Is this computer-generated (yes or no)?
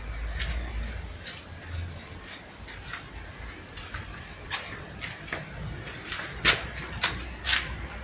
no